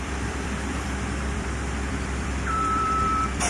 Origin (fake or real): fake